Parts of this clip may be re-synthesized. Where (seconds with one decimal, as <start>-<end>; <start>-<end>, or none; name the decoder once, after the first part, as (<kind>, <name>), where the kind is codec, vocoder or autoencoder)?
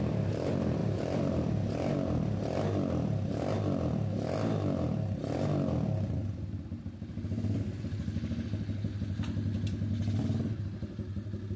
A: none